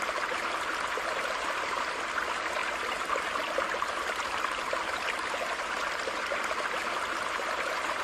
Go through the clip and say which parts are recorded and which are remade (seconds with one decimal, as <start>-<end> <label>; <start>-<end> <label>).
0.0-2.6 remade; 2.6-3.2 recorded; 3.2-8.0 remade

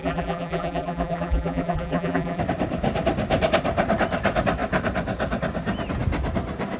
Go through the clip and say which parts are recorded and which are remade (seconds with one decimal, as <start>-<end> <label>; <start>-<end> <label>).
0.0-2.4 remade; 2.4-6.8 recorded

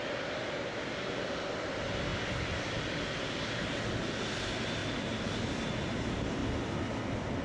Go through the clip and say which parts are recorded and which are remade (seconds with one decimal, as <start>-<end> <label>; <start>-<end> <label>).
0.0-4.8 recorded; 4.8-5.4 remade; 5.4-6.4 recorded; 6.4-7.0 remade; 7.0-7.4 recorded

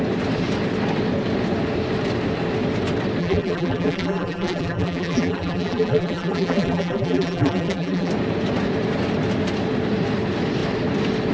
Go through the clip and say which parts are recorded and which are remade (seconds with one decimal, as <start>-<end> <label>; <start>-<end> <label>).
0.0-3.2 recorded; 3.2-8.1 remade; 8.1-11.3 recorded

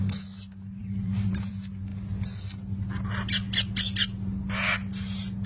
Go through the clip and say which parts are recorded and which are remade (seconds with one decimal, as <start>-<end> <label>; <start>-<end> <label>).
0.0-0.8 recorded; 0.8-1.5 remade; 1.5-5.5 recorded

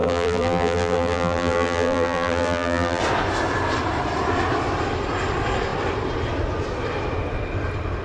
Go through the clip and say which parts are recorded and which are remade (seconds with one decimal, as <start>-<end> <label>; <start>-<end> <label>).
0.0-3.0 remade; 3.0-8.0 recorded